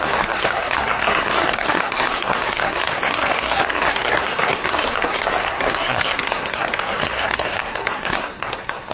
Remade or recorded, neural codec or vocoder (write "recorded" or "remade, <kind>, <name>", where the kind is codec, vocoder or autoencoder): remade, codec, SNAC